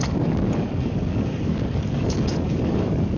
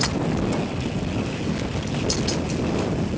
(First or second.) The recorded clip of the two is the second